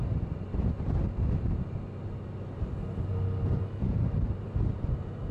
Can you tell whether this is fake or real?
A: real